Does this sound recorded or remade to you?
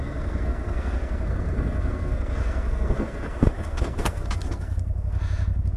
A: remade